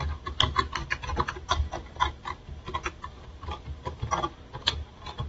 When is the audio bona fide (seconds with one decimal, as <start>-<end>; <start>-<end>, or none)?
0.0-1.1; 4.1-5.3